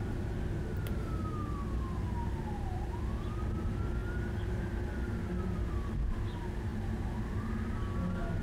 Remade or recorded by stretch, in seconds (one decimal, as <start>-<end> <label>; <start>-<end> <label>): 0.0-4.0 recorded; 4.0-5.2 remade; 5.2-6.7 recorded; 6.7-7.5 remade; 7.5-8.4 recorded